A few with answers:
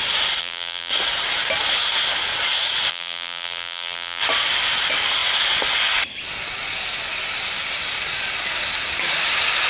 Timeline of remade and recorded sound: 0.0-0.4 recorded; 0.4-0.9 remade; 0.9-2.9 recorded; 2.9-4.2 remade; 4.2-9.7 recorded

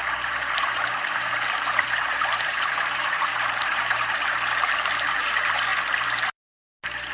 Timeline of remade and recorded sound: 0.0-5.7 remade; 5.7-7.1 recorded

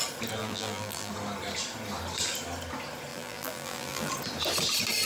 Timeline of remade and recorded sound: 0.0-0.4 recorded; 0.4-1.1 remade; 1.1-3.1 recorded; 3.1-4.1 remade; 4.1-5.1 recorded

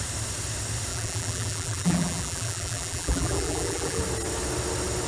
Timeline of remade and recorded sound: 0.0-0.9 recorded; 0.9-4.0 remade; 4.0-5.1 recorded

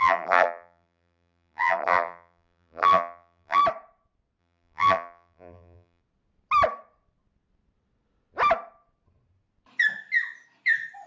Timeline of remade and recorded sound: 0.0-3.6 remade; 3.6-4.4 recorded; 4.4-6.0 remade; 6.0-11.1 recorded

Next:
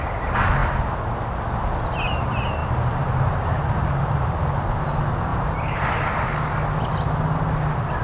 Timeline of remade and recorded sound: 0.0-2.6 recorded; 2.6-4.4 remade; 4.4-5.3 recorded; 5.3-5.9 remade; 5.9-8.0 recorded

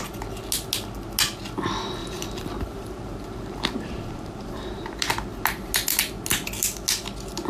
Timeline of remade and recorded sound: 0.0-2.0 recorded; 2.0-5.7 remade; 5.7-7.5 recorded

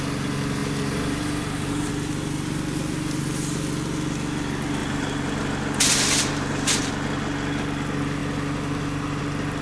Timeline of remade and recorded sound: 0.0-0.6 recorded; 0.6-1.9 remade; 1.9-4.8 recorded; 4.8-6.9 remade; 6.9-9.6 recorded